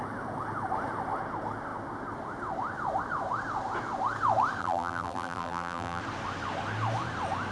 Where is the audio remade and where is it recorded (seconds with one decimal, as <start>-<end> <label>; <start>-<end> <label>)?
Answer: 0.0-4.6 recorded; 4.6-6.0 remade; 6.0-7.5 recorded